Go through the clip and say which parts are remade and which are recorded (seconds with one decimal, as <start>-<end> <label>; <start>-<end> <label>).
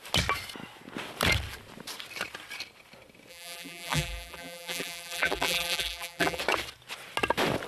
0.0-3.3 recorded; 3.3-6.4 remade; 6.4-7.7 recorded